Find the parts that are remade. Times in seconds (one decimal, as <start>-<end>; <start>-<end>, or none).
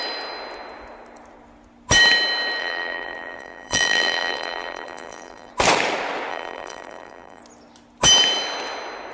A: 2.6-5.5; 6.3-7.4